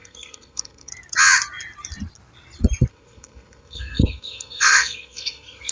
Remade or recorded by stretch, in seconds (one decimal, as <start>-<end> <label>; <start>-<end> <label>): 0.0-0.9 remade; 0.9-2.9 recorded; 2.9-5.7 remade